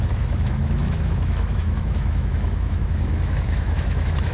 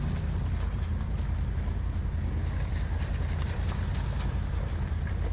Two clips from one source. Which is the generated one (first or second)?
first